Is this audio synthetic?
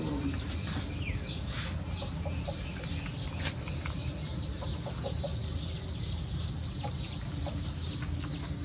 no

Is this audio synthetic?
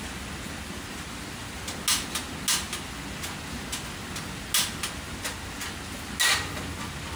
no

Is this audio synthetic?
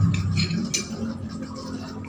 no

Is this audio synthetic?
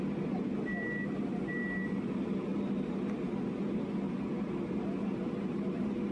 no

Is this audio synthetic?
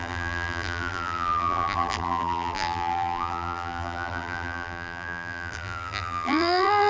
yes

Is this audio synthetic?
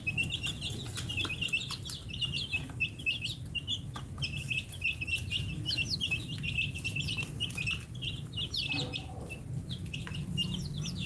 no